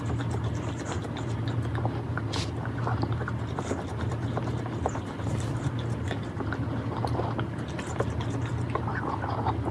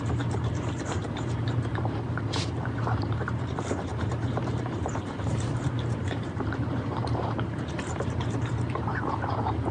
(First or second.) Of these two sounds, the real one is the first